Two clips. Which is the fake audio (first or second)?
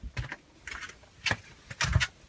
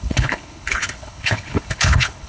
second